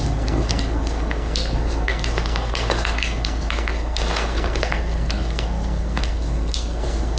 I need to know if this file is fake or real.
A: fake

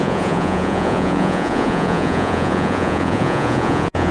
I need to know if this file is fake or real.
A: fake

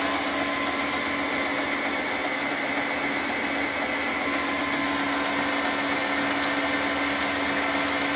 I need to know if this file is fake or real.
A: real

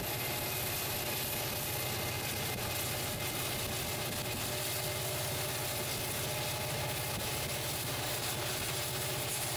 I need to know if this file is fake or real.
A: real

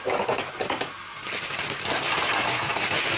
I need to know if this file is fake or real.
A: real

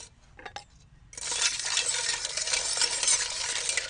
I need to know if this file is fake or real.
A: real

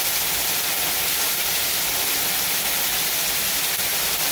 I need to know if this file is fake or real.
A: real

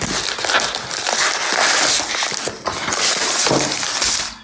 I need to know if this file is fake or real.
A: real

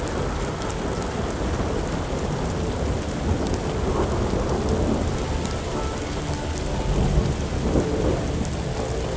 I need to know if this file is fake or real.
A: real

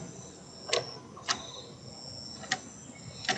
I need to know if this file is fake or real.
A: real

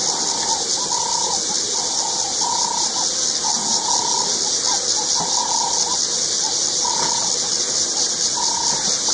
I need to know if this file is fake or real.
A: real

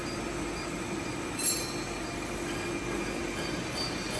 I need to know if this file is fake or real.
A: real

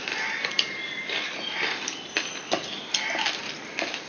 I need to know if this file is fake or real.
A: fake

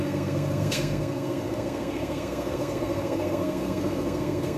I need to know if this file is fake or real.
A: fake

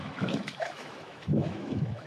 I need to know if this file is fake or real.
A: fake